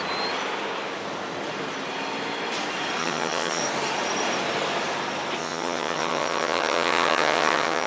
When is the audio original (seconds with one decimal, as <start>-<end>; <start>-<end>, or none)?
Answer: 0.0-3.0; 3.6-5.4